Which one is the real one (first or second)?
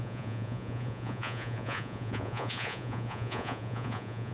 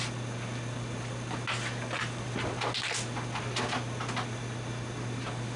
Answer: second